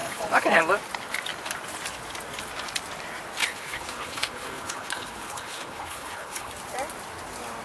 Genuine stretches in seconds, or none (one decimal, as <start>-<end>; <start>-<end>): 0.6-3.4; 6.5-7.6